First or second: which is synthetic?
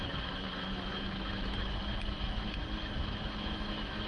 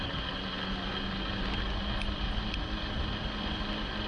first